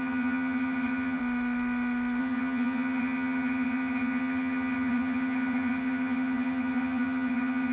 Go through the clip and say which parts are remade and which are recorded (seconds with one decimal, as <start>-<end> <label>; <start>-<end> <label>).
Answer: 0.0-1.2 remade; 1.2-2.2 recorded; 2.2-7.7 remade